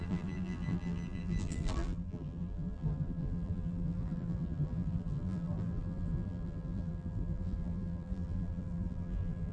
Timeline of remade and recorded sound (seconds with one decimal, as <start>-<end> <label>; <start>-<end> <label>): 0.0-9.5 remade